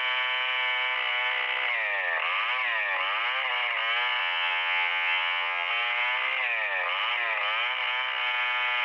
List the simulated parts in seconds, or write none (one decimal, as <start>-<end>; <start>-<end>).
4.2-5.7